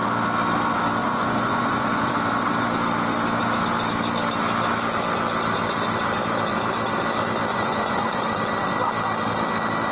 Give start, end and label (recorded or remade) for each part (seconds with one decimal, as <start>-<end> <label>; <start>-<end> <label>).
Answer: 0.0-1.0 recorded; 1.0-2.1 remade; 2.1-7.5 recorded; 7.5-8.4 remade; 8.4-9.9 recorded